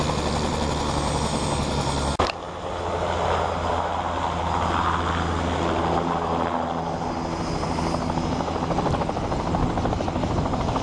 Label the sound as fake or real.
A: real